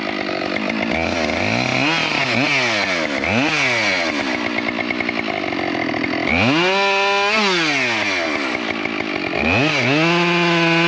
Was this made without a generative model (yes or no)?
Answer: yes